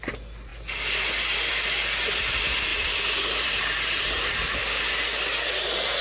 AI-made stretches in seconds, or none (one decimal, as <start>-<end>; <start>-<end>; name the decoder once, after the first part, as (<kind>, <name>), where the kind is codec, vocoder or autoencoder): 2.7-4.3 (vocoder, BigVGAN v2)